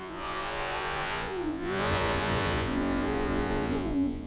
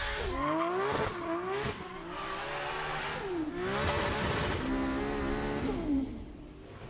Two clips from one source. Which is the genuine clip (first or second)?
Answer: second